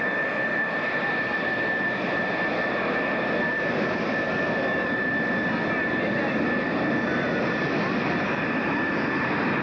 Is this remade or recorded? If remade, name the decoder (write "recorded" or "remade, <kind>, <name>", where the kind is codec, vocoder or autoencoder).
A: recorded